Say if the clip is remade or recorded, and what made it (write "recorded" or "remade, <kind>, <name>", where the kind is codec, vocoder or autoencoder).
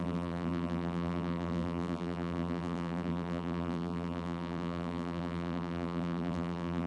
remade, vocoder, BigVGAN v2